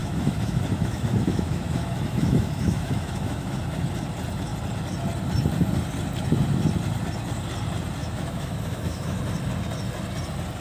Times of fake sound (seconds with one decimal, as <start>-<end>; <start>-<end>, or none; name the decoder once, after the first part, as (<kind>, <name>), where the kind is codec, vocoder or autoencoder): 0.0-3.6 (autoencoder, DAC-VAE); 8.0-9.2

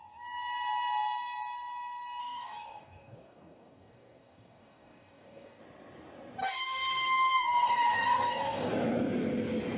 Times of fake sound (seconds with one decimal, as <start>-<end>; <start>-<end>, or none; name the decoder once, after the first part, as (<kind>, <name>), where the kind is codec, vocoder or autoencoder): 2.2-5.6 (codec, DAC); 6.4-8.7

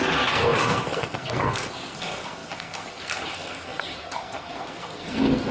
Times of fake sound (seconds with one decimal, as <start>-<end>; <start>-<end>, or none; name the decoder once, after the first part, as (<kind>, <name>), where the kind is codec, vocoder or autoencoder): 0.0-5.5 (codec, SNAC)

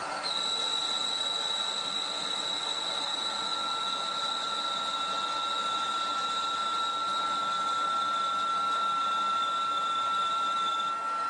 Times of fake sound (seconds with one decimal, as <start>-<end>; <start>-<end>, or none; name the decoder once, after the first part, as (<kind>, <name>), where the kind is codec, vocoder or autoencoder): none

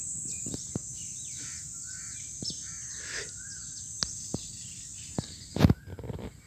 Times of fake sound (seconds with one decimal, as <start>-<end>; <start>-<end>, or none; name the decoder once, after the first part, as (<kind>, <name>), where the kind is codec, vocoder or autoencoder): none

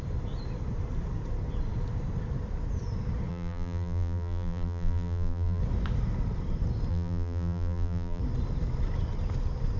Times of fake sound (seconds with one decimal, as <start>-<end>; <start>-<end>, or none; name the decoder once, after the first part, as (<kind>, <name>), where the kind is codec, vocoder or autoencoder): 3.3-5.6 (vocoder, BigVGAN v2); 6.9-8.2

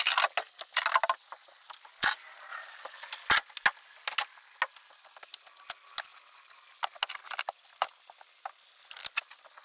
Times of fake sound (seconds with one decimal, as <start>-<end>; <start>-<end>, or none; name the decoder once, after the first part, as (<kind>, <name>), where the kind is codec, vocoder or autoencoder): none

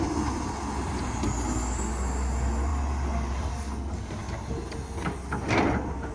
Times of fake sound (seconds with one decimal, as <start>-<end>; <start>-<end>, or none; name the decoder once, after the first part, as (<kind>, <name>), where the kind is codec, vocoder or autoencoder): none